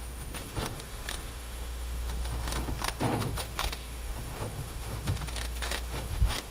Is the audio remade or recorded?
remade